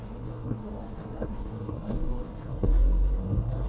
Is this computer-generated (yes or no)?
yes